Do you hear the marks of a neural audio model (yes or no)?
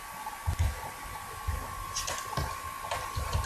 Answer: no